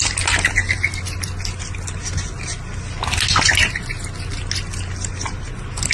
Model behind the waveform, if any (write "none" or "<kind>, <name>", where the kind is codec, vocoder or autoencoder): none